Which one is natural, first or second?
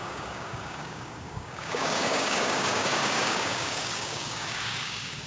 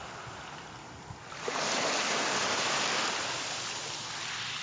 second